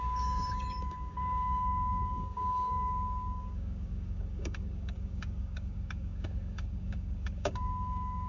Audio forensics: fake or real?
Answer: fake